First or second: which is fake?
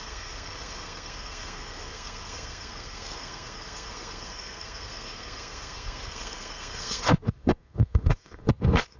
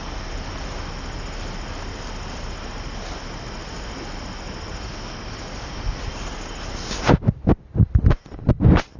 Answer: first